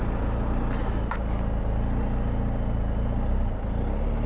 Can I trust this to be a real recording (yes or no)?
yes